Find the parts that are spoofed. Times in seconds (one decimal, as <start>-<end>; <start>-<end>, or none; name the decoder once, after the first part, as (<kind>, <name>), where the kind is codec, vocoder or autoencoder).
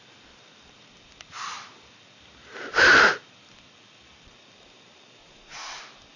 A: 5.2-5.8 (vocoder, Vocos)